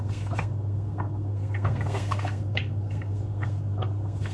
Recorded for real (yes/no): no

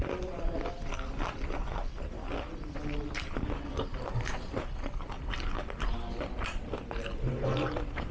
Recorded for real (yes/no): yes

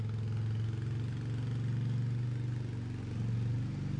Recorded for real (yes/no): yes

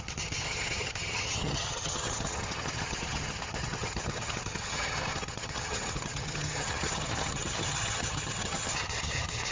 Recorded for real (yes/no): no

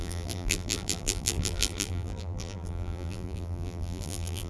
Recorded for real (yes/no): no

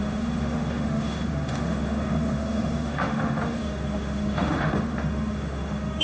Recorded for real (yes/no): no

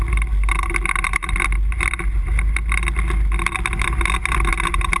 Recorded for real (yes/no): yes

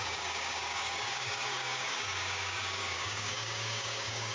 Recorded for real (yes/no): no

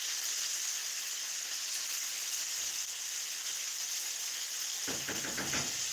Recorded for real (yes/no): yes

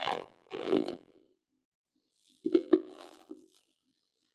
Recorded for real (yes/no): no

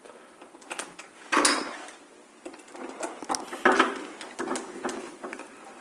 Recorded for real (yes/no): yes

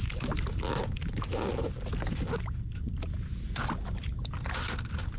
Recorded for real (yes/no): yes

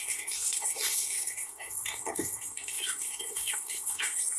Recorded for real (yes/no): no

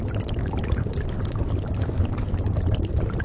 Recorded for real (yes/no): yes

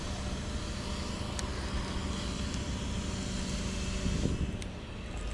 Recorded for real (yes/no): yes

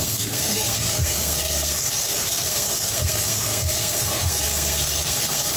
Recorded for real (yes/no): no